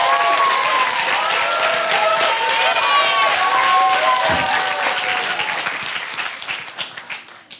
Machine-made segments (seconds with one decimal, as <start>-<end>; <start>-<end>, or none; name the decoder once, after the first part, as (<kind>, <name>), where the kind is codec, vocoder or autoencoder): 1.7-2.5 (vocoder, Vocos)

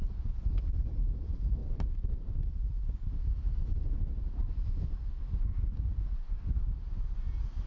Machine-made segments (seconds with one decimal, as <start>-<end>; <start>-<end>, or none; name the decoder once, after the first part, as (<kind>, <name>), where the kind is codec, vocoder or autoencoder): 1.6-2.4 (vocoder, BigVGAN v2)

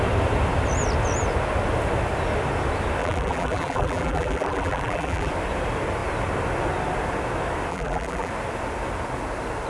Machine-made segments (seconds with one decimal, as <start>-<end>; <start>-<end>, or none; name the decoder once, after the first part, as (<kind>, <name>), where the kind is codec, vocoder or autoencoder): 3.0-5.3 (vocoder, BigVGAN v2); 7.7-8.3

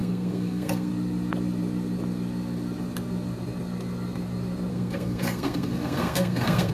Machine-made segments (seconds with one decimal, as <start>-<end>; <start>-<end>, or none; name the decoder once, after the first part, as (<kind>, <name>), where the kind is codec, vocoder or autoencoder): 0.0-0.9 (codec, SNAC); 4.7-6.7

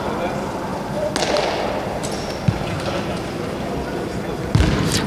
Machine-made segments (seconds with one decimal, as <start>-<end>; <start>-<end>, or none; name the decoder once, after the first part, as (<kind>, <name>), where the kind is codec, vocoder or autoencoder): none

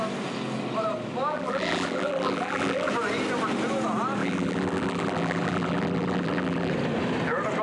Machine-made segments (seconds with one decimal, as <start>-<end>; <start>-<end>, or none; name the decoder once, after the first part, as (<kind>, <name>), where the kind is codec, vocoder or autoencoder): 1.3-2.9 (vocoder, BigVGAN v2); 4.2-6.7

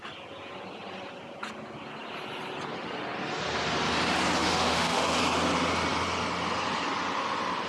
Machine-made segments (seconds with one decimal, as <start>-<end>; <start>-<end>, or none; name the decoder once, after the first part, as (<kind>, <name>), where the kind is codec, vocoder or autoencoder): 4.4-5.2 (autoencoder, DAC-VAE)

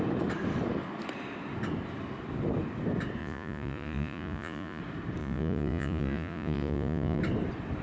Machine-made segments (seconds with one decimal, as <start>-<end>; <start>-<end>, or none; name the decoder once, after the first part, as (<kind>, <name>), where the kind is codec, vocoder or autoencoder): 3.2-4.8 (vocoder, Vocos); 5.2-7.2